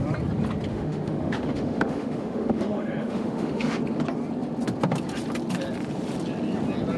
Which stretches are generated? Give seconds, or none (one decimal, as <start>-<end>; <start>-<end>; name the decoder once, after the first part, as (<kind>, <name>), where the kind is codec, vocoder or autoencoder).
0.7-3.8 (autoencoder, DAC-VAE)